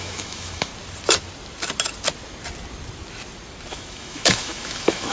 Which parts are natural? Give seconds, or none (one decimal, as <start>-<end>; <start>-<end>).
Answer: 0.7-3.7